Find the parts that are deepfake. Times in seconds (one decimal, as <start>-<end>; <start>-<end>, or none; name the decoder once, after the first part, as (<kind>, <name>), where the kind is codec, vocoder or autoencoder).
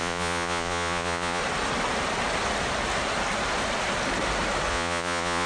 0.0-1.4 (vocoder, Vocos); 4.7-5.5